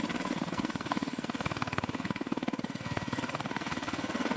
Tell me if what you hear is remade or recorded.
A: remade